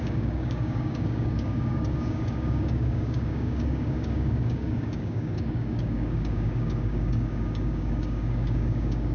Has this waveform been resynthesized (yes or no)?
yes